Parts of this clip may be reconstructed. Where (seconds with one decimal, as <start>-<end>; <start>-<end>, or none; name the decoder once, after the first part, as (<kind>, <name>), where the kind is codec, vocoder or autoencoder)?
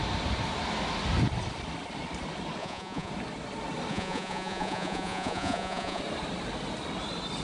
2.6-3.1 (vocoder, Vocos); 3.9-6.0